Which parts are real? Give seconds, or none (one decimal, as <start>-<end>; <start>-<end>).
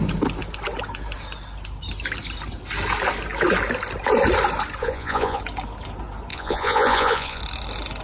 0.0-4.8; 5.4-6.3; 7.4-8.0